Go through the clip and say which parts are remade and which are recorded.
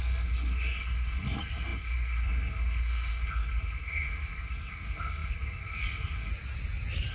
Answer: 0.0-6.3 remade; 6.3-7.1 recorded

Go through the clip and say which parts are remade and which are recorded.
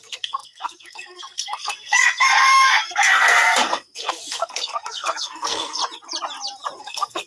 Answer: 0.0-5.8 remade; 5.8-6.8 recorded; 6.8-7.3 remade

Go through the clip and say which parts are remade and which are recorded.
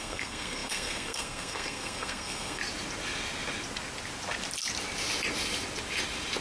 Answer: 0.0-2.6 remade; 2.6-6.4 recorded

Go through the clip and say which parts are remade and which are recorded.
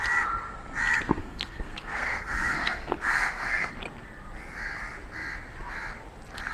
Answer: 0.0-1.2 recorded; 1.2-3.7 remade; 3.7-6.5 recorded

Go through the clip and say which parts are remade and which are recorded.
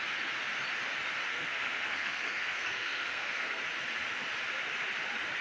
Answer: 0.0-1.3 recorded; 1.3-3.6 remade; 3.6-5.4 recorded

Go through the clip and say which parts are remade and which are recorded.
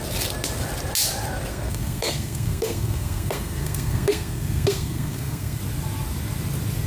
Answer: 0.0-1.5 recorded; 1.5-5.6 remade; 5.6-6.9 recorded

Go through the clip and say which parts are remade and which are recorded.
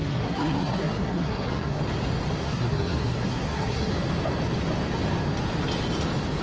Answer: 0.0-1.8 remade; 1.8-2.4 recorded; 2.4-3.9 remade; 3.9-6.4 recorded